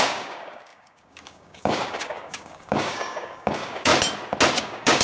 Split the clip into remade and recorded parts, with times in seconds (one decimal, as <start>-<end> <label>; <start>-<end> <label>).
0.0-3.9 remade; 3.9-4.6 recorded; 4.6-5.0 remade